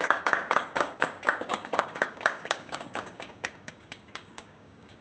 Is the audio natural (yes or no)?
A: no